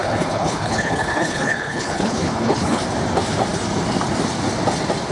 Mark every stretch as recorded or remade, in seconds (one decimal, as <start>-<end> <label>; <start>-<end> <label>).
0.0-2.8 remade; 2.8-5.1 recorded